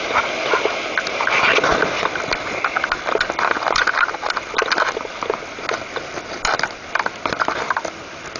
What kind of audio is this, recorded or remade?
recorded